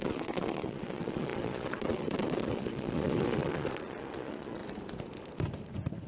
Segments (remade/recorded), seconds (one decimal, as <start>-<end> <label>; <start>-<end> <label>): 0.0-4.6 remade; 4.6-6.1 recorded